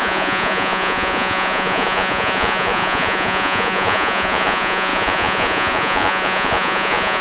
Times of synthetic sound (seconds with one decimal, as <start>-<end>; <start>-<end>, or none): 0.0-7.2